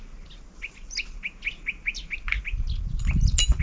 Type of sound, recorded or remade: recorded